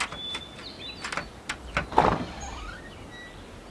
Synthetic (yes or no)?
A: no